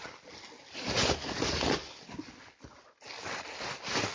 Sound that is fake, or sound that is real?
real